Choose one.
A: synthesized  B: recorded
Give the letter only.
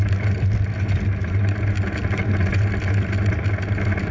B